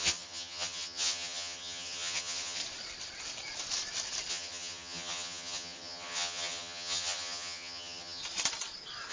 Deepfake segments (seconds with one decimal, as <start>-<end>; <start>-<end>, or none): 0.0-2.6; 4.3-8.2